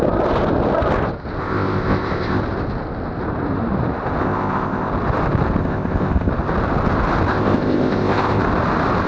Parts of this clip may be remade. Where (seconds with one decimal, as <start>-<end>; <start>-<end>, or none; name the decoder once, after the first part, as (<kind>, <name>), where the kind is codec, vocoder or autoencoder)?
1.4-2.4 (codec, ZipCodec); 4.2-4.9; 5.6-6.3; 7.3-8.4